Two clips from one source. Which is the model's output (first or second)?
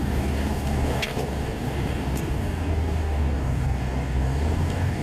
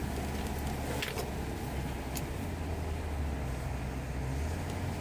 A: first